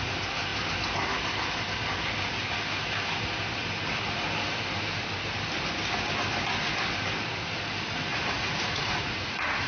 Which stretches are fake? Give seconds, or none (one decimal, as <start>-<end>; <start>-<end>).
8.1-9.7

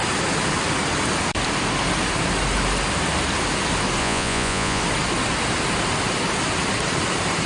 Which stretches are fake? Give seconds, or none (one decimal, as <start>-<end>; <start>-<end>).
4.0-4.8